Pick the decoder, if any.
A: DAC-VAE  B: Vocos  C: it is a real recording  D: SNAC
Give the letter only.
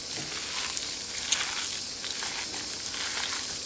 C